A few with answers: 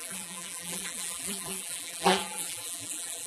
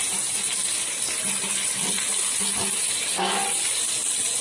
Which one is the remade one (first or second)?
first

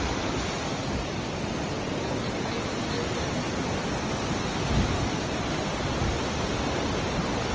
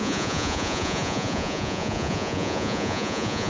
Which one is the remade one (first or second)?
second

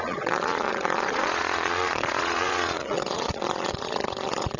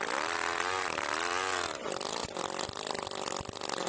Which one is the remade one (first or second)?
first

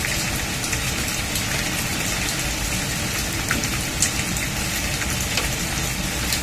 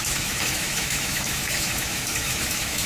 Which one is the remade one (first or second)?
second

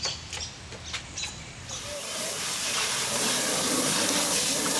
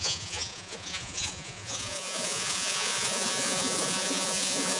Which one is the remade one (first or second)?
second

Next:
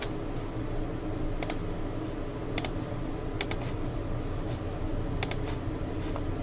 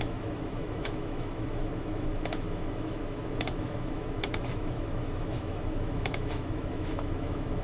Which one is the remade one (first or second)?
second